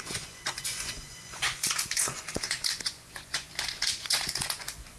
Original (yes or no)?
no